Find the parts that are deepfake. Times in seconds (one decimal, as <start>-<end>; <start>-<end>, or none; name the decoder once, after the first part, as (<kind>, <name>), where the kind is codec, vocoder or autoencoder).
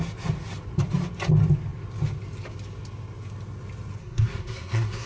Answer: 4.0-5.1 (codec, SNAC)